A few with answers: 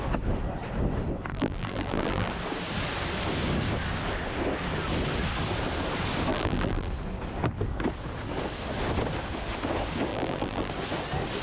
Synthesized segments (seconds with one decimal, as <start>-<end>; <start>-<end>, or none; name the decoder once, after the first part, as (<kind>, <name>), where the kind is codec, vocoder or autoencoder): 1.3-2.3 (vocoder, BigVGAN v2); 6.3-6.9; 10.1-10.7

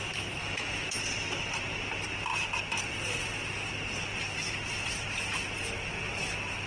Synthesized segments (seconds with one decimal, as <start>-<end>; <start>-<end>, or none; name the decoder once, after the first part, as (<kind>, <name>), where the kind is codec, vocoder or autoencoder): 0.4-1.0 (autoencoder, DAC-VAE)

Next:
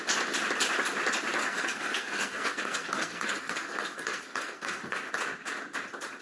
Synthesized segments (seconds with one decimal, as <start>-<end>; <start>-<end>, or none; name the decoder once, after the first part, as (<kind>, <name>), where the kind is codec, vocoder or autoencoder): 1.4-5.1 (codec, SNAC)